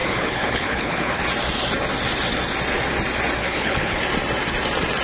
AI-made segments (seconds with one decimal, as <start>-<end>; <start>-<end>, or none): 0.0-1.2; 3.4-4.0